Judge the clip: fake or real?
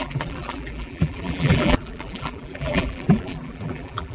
fake